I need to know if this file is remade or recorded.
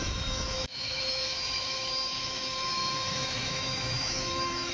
remade